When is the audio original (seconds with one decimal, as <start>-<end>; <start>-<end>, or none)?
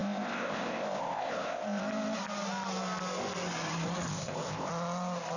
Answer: 1.8-4.1; 4.7-5.4